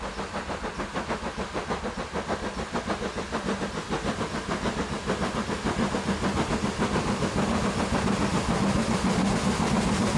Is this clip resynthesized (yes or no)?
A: no